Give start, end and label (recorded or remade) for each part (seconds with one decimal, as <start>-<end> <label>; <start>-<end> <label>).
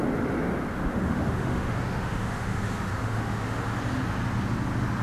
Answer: 0.0-0.7 recorded; 0.7-3.6 remade; 3.6-5.0 recorded